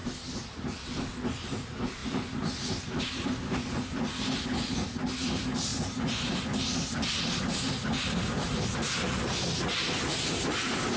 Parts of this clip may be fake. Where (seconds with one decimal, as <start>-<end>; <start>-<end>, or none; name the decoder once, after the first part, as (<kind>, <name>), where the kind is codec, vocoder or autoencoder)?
none